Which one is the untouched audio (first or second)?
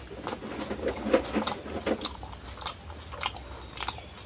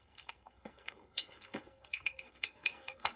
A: first